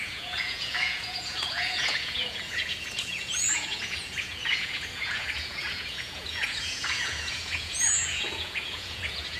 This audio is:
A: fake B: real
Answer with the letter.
A